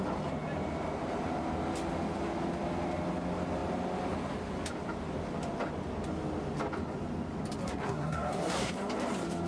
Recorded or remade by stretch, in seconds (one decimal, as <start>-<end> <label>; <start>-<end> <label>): 0.0-7.6 recorded; 7.6-8.7 remade; 8.7-9.5 recorded